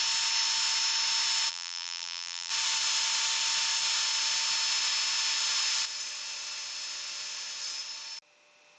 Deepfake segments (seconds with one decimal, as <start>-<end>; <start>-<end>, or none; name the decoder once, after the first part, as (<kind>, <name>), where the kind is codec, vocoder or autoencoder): 1.5-2.5 (vocoder, BigVGAN v2)